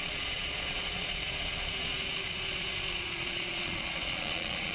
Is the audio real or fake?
fake